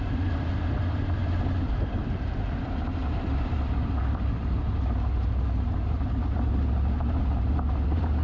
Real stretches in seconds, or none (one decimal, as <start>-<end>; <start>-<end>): none